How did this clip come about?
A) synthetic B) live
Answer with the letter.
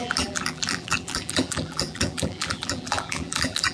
A